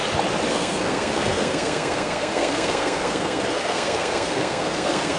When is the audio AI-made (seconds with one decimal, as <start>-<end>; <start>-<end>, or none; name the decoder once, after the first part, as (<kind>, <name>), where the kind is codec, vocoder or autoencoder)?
0.5-5.2 (codec, SNAC)